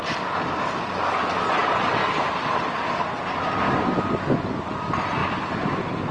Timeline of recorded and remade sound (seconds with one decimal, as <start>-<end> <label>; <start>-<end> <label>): 0.0-6.1 recorded